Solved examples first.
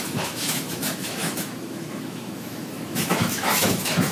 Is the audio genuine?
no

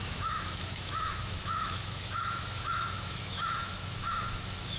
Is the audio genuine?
no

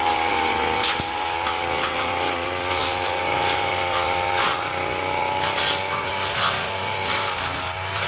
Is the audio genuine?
yes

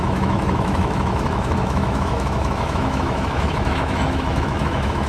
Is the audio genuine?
no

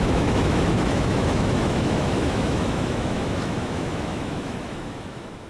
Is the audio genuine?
no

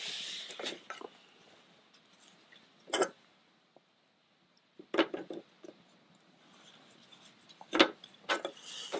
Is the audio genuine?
yes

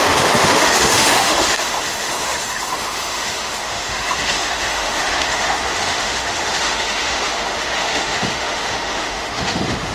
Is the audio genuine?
no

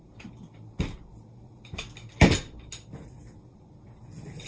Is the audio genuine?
yes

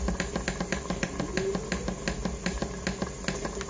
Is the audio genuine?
yes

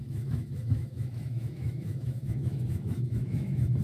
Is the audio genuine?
no